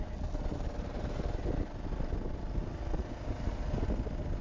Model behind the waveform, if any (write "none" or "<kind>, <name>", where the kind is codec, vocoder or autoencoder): none